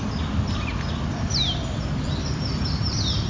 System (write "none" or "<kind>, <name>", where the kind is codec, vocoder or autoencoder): none